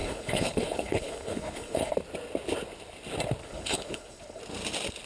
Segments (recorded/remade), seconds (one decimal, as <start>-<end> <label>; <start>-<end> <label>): 0.0-1.9 remade; 1.9-3.4 recorded; 3.4-4.4 remade; 4.4-5.1 recorded